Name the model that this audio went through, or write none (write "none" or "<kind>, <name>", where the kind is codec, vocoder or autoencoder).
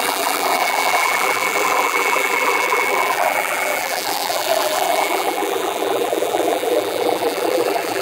vocoder, BigVGAN v2